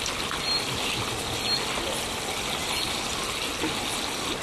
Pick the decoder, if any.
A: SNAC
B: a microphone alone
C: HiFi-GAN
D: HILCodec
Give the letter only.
B